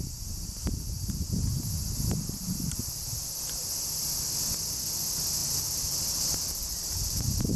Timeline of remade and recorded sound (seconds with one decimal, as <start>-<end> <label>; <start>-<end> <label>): 0.0-6.6 recorded; 6.6-7.6 remade